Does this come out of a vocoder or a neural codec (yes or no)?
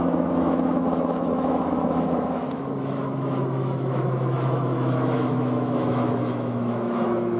yes